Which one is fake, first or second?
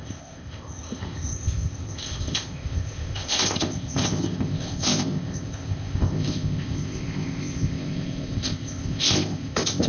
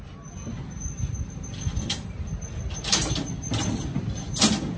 first